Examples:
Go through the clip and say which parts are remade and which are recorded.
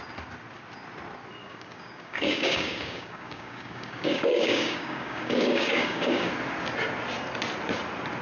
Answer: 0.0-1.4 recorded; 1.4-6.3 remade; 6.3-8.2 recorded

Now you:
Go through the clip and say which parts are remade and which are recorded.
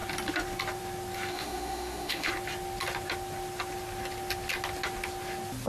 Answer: 0.0-1.3 recorded; 1.3-2.3 remade; 2.3-5.7 recorded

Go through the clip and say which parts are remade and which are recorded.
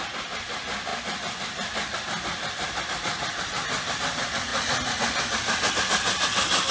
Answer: 0.0-6.7 recorded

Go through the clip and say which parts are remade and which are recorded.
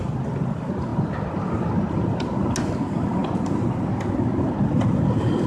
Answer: 0.0-5.5 recorded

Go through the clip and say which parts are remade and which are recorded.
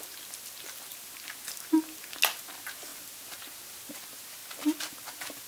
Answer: 0.0-5.5 recorded